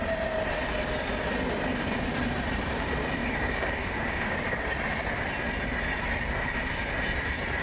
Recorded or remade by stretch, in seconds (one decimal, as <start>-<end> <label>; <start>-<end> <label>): 0.0-3.2 recorded; 3.2-4.6 remade; 4.6-7.6 recorded